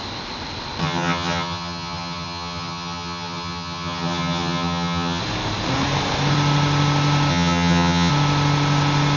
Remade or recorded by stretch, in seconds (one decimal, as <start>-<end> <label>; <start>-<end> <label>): 0.0-0.8 recorded; 0.8-5.2 remade; 5.2-7.3 recorded; 7.3-8.1 remade; 8.1-9.2 recorded